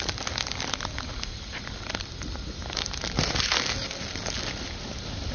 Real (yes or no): yes